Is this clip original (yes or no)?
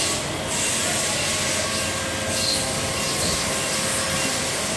yes